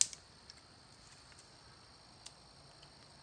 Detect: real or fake real